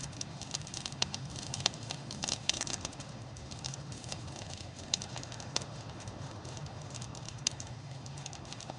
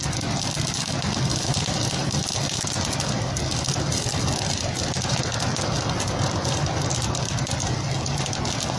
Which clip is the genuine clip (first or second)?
second